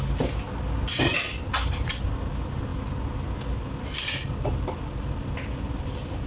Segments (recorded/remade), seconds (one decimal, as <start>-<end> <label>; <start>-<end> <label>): 0.0-6.3 recorded